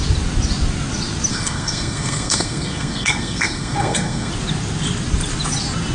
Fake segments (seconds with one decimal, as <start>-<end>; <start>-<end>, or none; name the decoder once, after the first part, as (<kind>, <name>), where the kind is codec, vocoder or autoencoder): 1.3-4.3 (codec, SNAC)